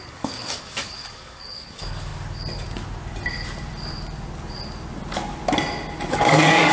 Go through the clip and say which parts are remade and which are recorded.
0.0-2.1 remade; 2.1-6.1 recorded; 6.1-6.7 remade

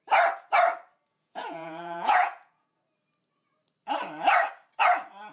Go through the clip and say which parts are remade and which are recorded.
0.0-1.1 recorded; 1.1-2.8 remade; 2.8-5.3 recorded

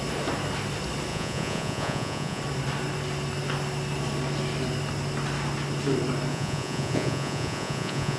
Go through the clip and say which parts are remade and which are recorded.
0.0-1.1 recorded; 1.1-2.4 remade; 2.4-6.3 recorded; 6.3-8.2 remade

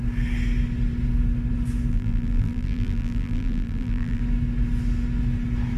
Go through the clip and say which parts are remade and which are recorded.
0.0-1.9 recorded; 1.9-4.2 remade; 4.2-5.8 recorded

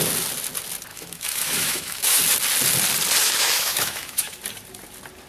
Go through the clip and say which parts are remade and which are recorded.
0.0-0.9 recorded; 0.9-2.2 remade; 2.2-3.2 recorded; 3.2-4.4 remade; 4.4-5.3 recorded

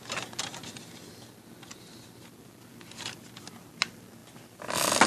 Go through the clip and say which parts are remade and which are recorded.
0.0-0.5 recorded; 0.5-3.6 remade; 3.6-4.2 recorded; 4.2-5.1 remade

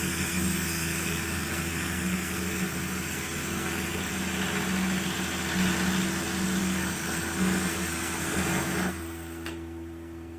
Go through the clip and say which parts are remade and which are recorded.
0.0-4.1 remade; 4.1-6.6 recorded; 6.6-10.4 remade

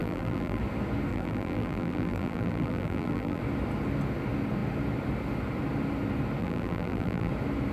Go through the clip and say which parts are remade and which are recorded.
0.0-0.6 remade; 0.6-1.1 recorded; 1.1-3.4 remade; 3.4-6.4 recorded; 6.4-7.3 remade; 7.3-7.7 recorded